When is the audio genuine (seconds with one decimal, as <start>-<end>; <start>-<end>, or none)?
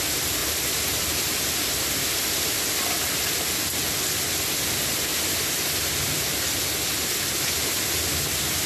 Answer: 0.0-5.1; 6.2-8.7